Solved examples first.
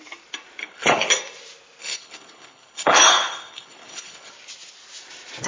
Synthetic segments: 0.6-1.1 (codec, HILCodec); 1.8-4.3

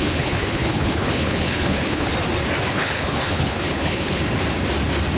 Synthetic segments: 0.0-2.1 (codec, HILCodec); 2.7-4.2

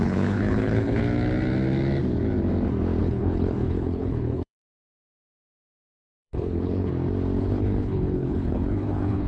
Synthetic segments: 0.0-1.0 (codec, HILCodec); 3.0-6.9; 7.4-9.3